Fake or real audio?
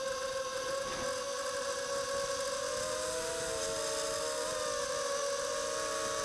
real